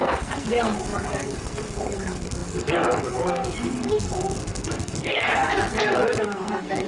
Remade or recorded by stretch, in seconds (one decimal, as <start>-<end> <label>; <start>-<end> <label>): 0.0-6.9 remade